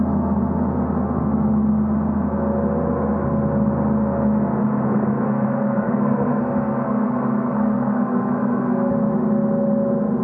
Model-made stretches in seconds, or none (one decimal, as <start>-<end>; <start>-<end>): 4.6-8.9